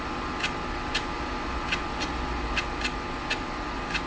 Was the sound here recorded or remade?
recorded